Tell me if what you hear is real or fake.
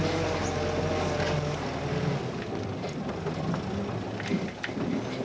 real